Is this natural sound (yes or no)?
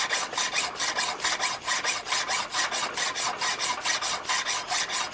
yes